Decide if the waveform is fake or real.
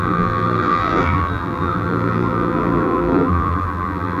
fake